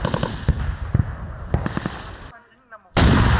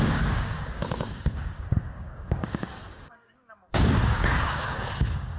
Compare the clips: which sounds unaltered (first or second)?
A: first